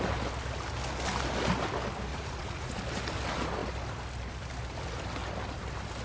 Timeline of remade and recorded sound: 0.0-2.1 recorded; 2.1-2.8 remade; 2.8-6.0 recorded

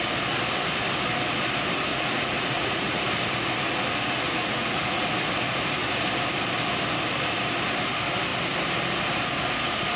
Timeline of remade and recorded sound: 0.0-1.9 recorded; 1.9-3.0 remade; 3.0-4.3 recorded; 4.3-5.0 remade; 5.0-10.0 recorded

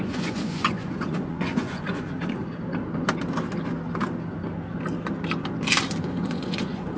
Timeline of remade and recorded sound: 0.0-2.4 remade; 2.4-6.0 recorded; 6.0-7.0 remade

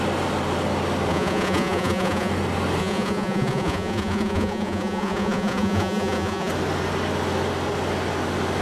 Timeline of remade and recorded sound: 0.0-1.1 recorded; 1.1-2.3 remade; 2.3-2.8 recorded; 2.8-6.5 remade; 6.5-8.6 recorded

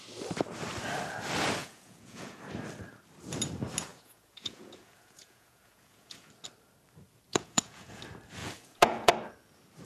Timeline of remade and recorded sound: 0.0-1.6 recorded; 1.6-2.4 remade; 2.4-3.9 recorded; 3.9-6.3 remade; 6.3-7.3 recorded; 7.3-8.0 remade; 8.0-8.4 recorded; 8.4-9.1 remade; 9.1-9.9 recorded

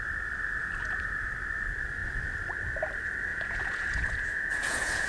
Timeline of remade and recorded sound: 0.0-0.6 recorded; 0.6-1.3 remade; 1.3-3.3 recorded; 3.3-5.1 remade

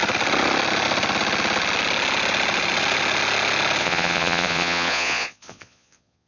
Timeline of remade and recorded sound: 0.0-3.8 recorded; 3.8-6.3 remade

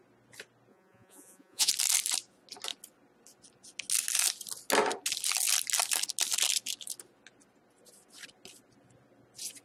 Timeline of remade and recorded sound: 0.0-0.7 recorded; 0.7-1.7 remade; 1.7-9.6 recorded